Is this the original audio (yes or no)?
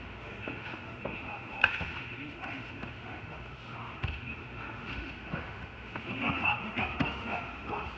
no